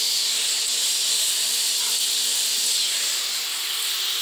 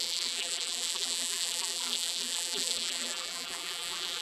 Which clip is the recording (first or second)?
first